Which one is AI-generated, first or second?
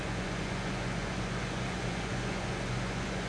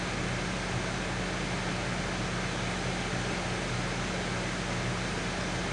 first